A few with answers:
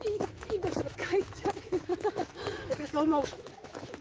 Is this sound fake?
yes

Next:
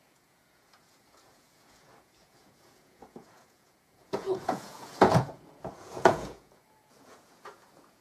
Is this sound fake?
yes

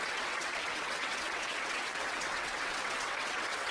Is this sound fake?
yes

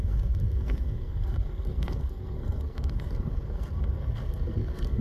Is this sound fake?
yes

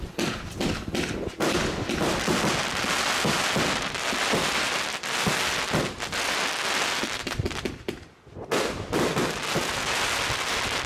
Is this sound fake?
no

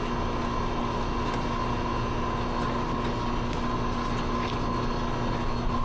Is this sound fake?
no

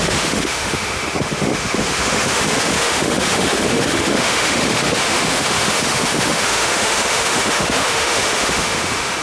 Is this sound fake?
yes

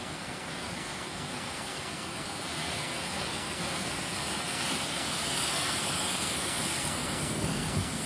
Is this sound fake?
yes